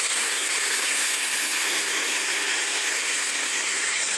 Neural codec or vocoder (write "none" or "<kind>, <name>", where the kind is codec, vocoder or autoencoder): codec, SNAC